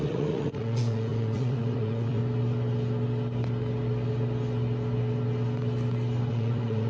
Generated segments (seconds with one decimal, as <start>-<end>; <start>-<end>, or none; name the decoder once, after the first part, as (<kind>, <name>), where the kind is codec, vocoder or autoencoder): 0.0-2.2 (vocoder, Vocos); 6.3-6.9